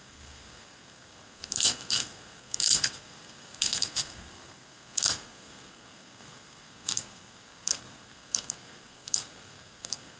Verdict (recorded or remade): remade